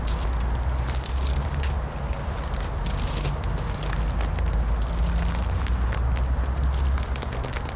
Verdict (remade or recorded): recorded